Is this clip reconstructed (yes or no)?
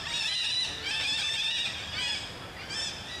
no